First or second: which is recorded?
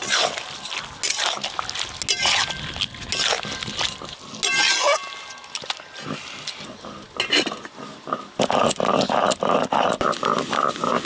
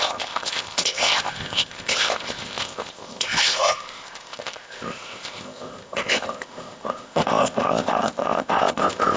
first